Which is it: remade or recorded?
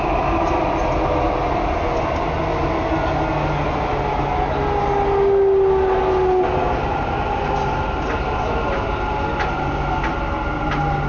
recorded